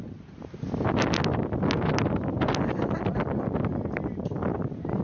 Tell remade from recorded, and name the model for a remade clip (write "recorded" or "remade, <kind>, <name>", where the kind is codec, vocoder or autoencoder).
recorded